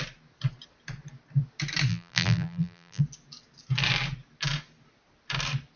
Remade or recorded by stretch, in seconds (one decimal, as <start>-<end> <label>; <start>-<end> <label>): 0.0-1.9 recorded; 1.9-3.0 remade; 3.0-5.8 recorded